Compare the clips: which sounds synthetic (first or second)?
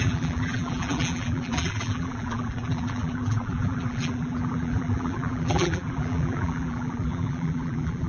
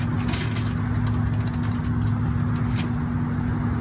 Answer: first